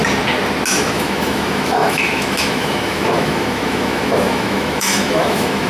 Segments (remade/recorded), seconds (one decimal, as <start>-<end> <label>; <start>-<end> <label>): 0.0-0.7 recorded; 0.7-5.7 remade